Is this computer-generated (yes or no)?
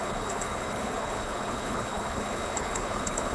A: yes